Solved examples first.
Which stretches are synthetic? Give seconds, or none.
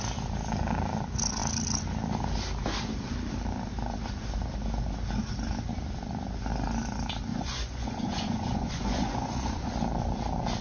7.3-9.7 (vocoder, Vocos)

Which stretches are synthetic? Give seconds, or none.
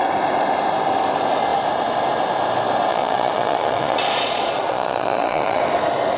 2.9-5.6 (vocoder, Vocos)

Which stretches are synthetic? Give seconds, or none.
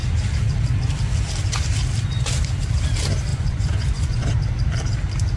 3.3-4.3 (vocoder, Vocos)